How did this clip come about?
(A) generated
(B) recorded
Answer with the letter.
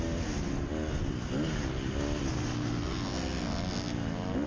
B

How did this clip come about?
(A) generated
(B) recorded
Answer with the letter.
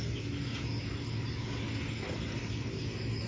B